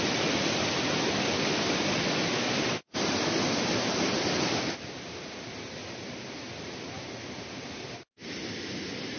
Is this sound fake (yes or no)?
no